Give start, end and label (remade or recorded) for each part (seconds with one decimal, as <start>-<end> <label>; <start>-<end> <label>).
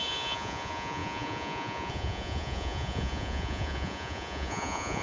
0.0-5.0 remade